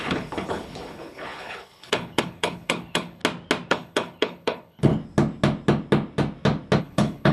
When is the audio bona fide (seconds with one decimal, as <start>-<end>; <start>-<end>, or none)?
3.2-3.7; 4.9-6.8